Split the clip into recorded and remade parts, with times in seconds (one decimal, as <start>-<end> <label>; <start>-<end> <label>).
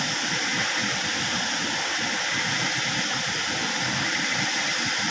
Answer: 0.0-5.1 recorded